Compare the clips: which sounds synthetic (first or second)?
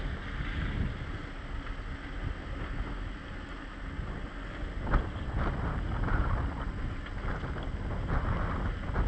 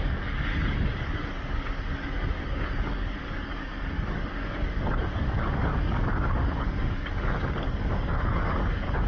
second